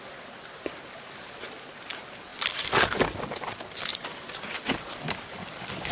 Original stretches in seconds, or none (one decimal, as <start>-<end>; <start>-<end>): 0.0-2.3